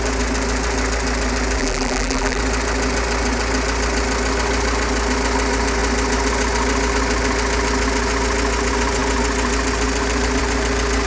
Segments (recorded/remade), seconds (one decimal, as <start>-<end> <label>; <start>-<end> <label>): 0.0-1.6 recorded; 1.6-2.4 remade; 2.4-11.1 recorded